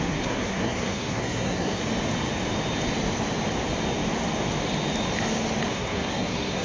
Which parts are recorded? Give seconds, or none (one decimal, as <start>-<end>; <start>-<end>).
1.8-5.7